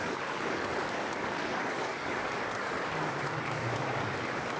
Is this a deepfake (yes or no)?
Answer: yes